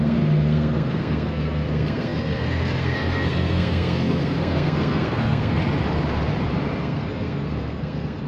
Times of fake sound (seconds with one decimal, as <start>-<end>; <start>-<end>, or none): 0.0-5.6; 6.8-8.3